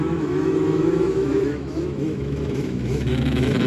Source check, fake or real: fake